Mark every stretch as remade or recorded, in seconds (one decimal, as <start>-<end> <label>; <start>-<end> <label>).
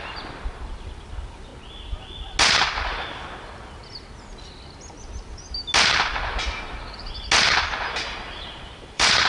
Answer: 0.0-1.5 remade; 1.5-2.6 recorded; 2.6-3.8 remade; 3.8-8.3 recorded; 8.3-9.3 remade